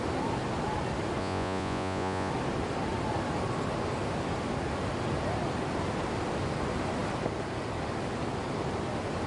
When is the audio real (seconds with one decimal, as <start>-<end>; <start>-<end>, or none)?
0.0-1.2; 2.3-9.3